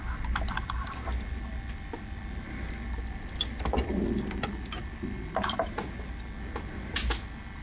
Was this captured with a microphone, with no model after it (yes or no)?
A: yes